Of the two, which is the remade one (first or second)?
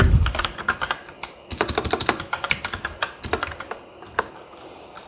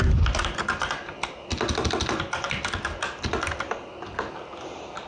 first